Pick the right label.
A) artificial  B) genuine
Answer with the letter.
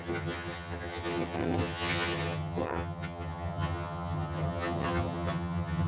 A